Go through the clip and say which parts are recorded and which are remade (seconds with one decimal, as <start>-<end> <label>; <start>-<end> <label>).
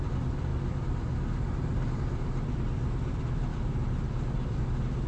0.0-5.1 remade